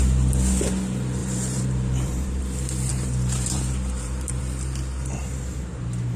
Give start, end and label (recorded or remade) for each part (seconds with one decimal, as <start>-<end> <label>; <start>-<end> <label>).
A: 0.0-1.2 recorded; 1.2-2.4 remade; 2.4-2.9 recorded; 2.9-4.4 remade; 4.4-6.2 recorded